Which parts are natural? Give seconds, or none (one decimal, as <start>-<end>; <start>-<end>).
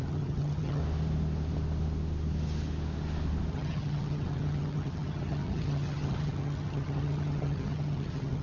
0.8-3.5